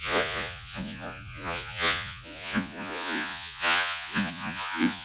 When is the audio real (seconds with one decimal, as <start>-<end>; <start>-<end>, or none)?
none